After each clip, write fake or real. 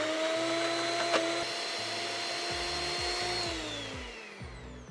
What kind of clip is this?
real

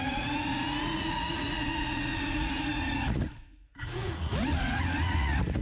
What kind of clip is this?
fake